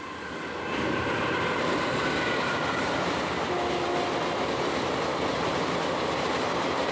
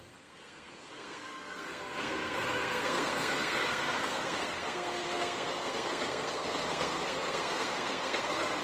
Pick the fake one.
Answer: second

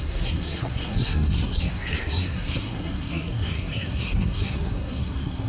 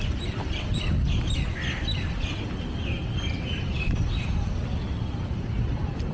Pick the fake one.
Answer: first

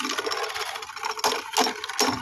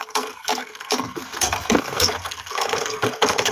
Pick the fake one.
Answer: second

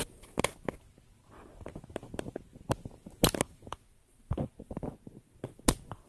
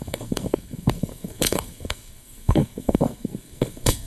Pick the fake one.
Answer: second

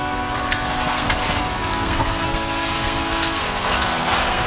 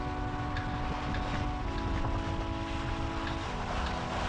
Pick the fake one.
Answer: first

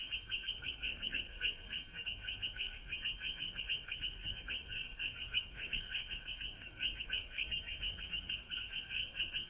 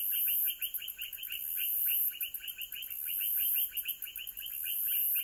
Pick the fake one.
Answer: first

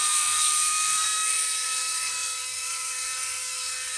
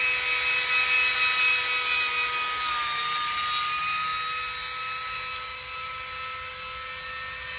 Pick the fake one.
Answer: first